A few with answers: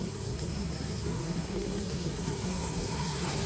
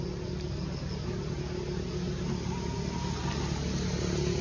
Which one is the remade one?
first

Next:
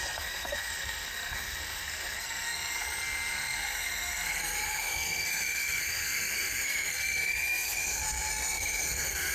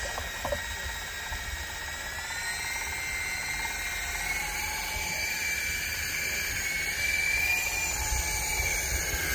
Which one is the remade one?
first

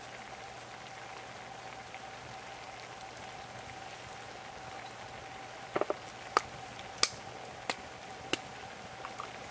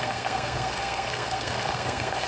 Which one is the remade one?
second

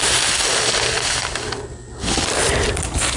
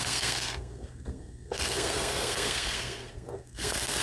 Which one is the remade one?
second